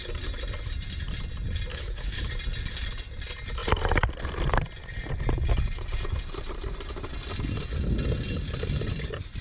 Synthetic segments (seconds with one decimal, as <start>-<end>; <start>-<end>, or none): 1.7-2.3